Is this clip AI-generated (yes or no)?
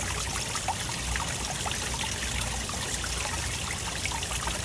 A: no